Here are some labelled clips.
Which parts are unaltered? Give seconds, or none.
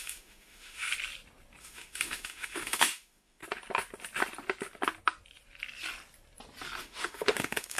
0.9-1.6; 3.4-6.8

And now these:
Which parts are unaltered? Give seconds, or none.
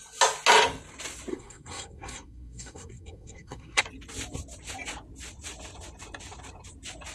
0.0-1.3; 3.8-7.1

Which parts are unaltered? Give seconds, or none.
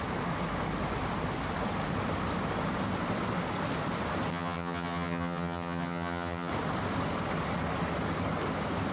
0.0-4.3; 6.5-8.9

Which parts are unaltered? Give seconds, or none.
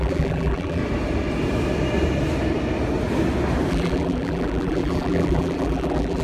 0.8-3.7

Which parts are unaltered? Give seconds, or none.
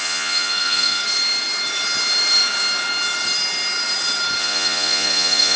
1.0-4.4